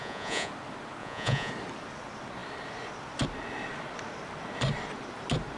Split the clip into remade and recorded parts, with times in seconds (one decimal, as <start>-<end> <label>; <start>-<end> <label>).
0.0-0.5 remade; 0.5-1.0 recorded; 1.0-1.5 remade; 1.5-5.6 recorded